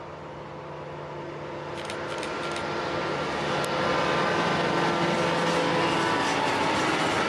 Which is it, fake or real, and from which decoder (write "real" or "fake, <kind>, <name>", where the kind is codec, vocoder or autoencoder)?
real